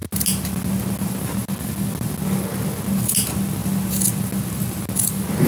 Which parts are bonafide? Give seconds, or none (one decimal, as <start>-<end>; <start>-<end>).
0.0-5.5

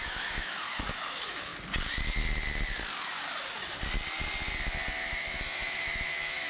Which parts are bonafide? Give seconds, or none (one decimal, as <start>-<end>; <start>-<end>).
1.5-4.9

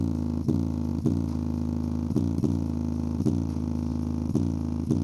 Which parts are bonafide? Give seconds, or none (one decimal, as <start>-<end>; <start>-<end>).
0.0-5.0

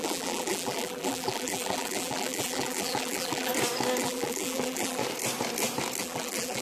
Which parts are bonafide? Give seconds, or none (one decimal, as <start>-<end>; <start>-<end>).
3.5-4.0; 5.0-6.0

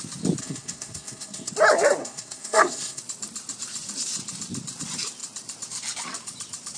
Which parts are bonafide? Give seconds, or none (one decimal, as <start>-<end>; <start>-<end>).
0.0-0.4; 1.5-2.0; 3.0-6.8

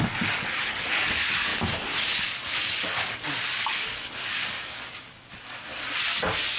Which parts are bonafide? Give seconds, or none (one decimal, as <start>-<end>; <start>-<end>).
5.7-6.6

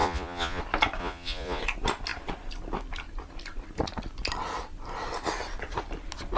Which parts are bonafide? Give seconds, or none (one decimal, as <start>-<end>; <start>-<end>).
0.6-1.0; 1.6-6.4